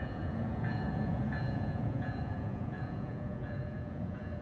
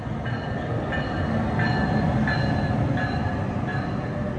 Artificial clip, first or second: first